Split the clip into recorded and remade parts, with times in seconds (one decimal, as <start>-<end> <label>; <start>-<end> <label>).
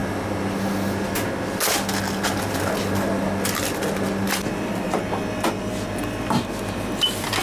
0.0-7.4 recorded